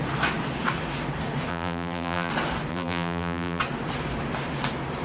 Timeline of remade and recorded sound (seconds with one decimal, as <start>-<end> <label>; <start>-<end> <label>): 0.0-1.5 recorded; 1.5-2.3 remade; 2.3-2.7 recorded; 2.7-3.6 remade; 3.6-5.0 recorded